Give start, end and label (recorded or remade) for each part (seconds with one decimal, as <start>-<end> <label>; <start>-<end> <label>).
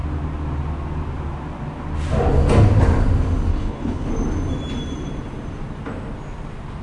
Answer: 0.0-3.5 recorded; 3.5-4.1 remade; 4.1-6.8 recorded